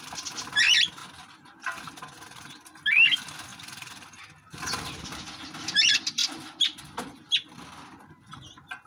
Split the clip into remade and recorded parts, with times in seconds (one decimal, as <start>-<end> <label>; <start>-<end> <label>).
0.0-8.9 recorded